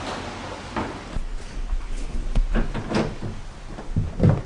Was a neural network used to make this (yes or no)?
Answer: no